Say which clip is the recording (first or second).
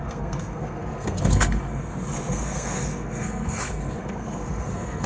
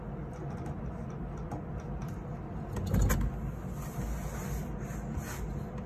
second